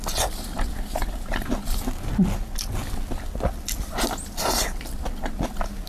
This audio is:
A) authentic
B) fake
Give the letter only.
A